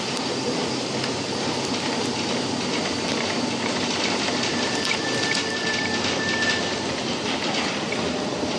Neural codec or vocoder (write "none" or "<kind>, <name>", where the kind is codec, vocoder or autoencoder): vocoder, BigVGAN v2